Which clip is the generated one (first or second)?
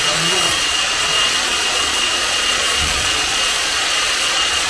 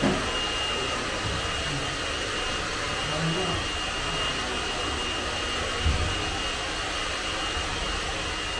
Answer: first